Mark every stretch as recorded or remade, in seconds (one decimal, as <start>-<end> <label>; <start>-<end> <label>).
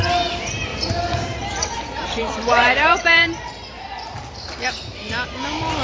0.0-0.7 recorded; 0.7-4.2 remade; 4.2-5.8 recorded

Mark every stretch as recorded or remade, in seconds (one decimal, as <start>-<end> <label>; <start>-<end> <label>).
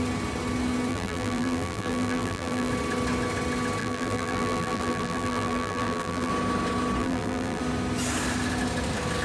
0.0-0.9 recorded; 0.9-2.7 remade; 2.7-3.8 recorded; 3.8-6.3 remade; 6.3-7.0 recorded; 7.0-7.6 remade; 7.6-9.2 recorded